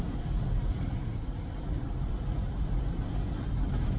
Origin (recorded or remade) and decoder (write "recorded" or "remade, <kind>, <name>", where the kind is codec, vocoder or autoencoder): recorded